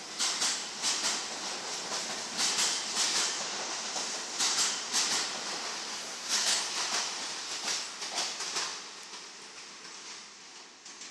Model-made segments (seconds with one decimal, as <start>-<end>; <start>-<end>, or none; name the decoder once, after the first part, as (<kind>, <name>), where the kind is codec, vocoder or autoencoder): 5.9-6.6 (codec, SNAC)